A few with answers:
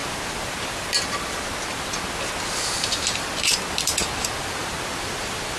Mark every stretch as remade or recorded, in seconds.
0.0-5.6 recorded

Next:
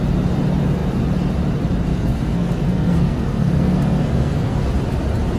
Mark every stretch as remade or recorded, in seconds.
0.0-1.9 recorded; 1.9-4.7 remade; 4.7-5.4 recorded

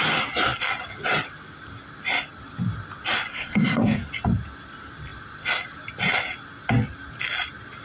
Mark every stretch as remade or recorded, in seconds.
0.0-3.3 recorded; 3.3-4.1 remade; 4.1-7.8 recorded

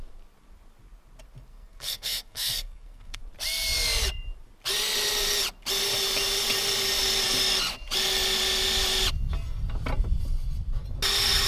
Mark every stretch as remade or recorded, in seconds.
0.0-1.5 recorded; 1.5-3.2 remade; 3.2-11.5 recorded

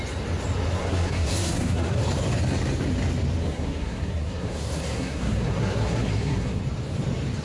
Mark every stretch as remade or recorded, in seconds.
0.0-0.8 recorded; 0.8-2.0 remade; 2.0-3.4 recorded; 3.4-6.6 remade; 6.6-7.4 recorded

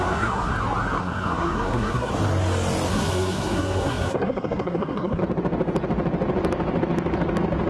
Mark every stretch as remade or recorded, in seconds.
0.0-0.5 remade; 0.5-1.0 recorded; 1.0-2.1 remade; 2.1-2.9 recorded; 2.9-5.2 remade; 5.2-7.7 recorded

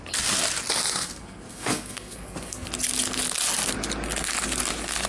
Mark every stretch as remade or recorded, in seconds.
0.0-0.8 recorded; 0.8-2.7 remade; 2.7-5.1 recorded

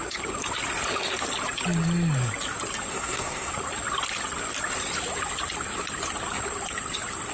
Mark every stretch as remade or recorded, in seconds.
0.0-2.9 recorded; 2.9-3.5 remade; 3.5-7.3 recorded